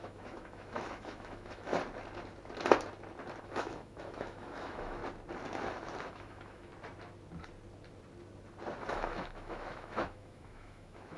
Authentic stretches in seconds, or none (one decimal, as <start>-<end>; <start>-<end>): 1.7-3.4; 5.0-6.1; 6.7-8.9